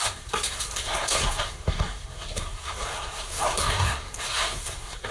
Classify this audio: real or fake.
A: fake